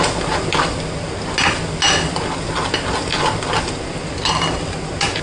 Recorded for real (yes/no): yes